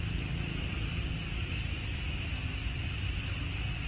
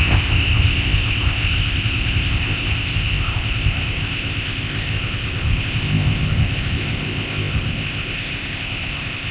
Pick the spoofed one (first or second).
second